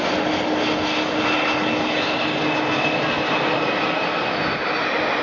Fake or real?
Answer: real